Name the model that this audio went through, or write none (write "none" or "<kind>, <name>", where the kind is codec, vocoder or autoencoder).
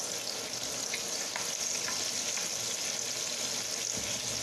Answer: none